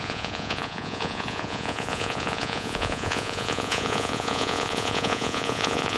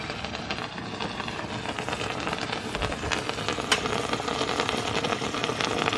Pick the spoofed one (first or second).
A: first